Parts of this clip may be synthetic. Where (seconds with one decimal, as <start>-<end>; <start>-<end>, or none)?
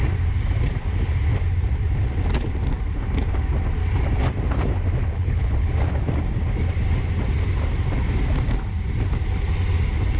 5.0-5.7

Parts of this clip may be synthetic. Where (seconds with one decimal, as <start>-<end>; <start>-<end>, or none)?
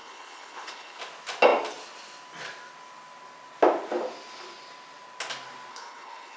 0.0-1.0; 5.7-6.4